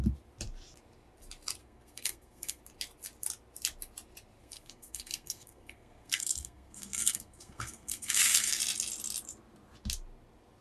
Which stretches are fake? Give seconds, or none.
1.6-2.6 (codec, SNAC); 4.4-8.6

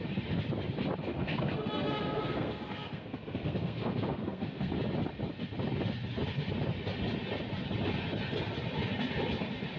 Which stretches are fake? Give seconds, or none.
1.0-4.7 (codec, SNAC)

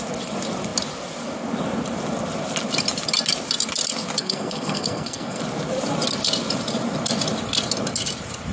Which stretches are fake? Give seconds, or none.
4.2-5.4 (codec, SNAC)

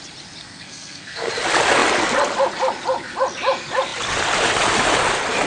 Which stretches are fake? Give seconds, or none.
0.4-1.3 (codec, SNAC)

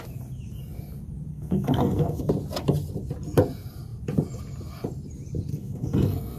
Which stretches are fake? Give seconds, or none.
1.3-2.3 (codec, SNAC); 5.5-6.4

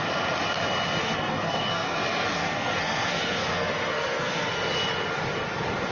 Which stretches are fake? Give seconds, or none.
1.0-4.5 (codec, SNAC)